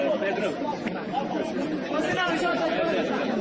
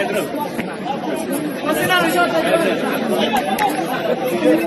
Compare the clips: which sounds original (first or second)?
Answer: second